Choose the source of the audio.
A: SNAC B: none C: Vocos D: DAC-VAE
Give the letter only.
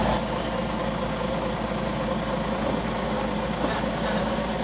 B